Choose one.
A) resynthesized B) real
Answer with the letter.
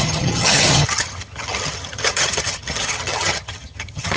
A